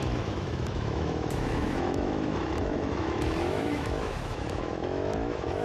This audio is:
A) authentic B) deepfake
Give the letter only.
B